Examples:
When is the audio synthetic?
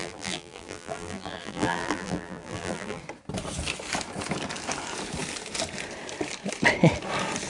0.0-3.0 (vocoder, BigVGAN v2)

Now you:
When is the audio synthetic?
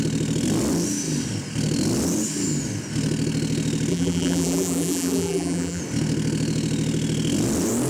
3.9-5.8 (vocoder, BigVGAN v2)